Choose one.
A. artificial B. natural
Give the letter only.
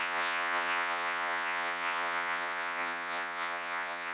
A